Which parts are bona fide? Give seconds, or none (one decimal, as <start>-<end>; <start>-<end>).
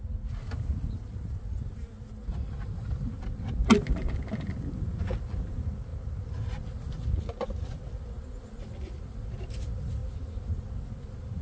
0.0-11.4